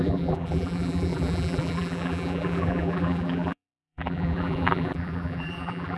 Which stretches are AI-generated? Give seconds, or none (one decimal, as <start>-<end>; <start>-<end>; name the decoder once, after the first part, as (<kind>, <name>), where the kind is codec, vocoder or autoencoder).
0.0-6.0 (vocoder, BigVGAN v2)